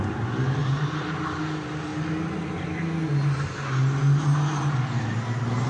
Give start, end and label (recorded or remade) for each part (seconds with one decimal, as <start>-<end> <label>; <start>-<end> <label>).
0.0-0.6 recorded; 0.6-1.4 remade; 1.4-5.7 recorded